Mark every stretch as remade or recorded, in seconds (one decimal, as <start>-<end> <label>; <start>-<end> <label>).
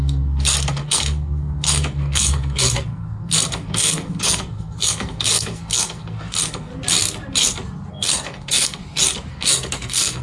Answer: 0.0-6.7 remade; 6.7-7.9 recorded; 7.9-8.8 remade; 8.8-9.3 recorded; 9.3-10.2 remade